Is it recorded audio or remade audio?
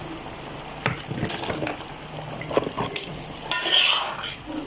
recorded